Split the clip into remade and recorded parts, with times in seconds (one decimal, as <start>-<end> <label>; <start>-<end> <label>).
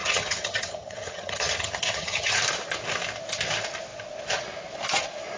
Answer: 0.0-2.4 remade; 2.4-5.4 recorded